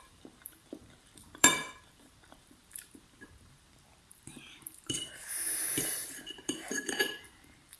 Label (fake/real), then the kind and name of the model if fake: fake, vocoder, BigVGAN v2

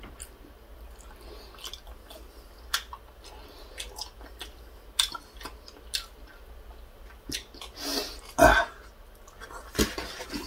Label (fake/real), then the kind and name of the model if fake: real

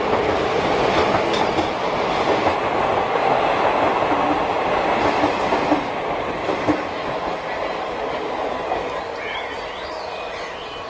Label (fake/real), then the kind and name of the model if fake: real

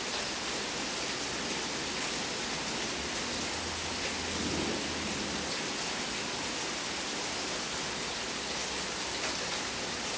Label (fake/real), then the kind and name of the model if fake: real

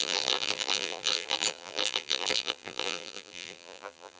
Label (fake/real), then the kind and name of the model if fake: fake, vocoder, BigVGAN v2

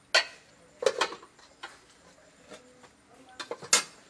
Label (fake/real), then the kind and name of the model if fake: real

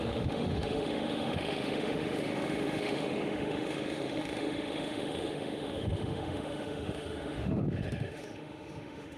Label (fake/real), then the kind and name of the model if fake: fake, autoencoder, DAC-VAE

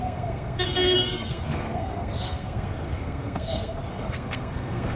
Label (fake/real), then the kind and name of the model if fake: fake, codec, SNAC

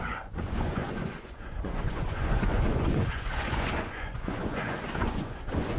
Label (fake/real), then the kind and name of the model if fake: fake, vocoder, Vocos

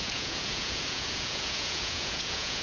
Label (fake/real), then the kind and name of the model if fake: fake, vocoder, Vocos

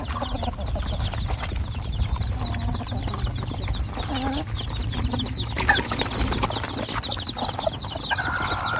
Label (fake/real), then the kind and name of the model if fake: real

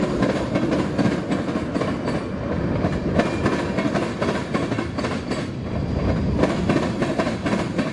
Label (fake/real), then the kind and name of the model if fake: real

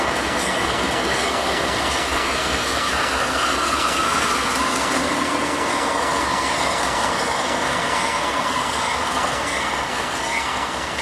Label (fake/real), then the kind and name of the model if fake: fake, codec, SNAC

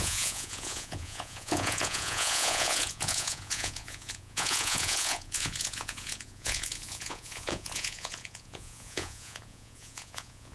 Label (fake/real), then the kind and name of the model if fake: fake, vocoder, Vocos